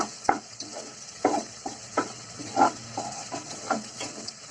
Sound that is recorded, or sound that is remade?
remade